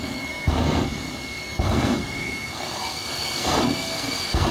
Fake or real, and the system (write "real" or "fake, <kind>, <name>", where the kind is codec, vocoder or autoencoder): fake, codec, SNAC